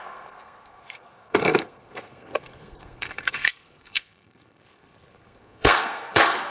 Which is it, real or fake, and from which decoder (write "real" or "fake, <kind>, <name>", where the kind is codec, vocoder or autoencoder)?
fake, codec, SNAC